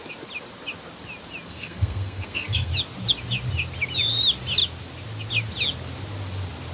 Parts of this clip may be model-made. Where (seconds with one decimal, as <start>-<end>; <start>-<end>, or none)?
1.5-2.7